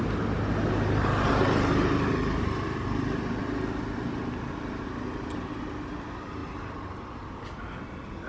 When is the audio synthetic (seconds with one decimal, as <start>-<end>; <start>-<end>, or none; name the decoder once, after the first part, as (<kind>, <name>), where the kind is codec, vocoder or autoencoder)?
none